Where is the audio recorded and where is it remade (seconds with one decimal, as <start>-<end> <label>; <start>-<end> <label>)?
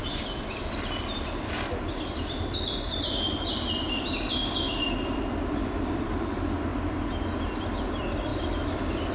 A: 0.0-9.1 remade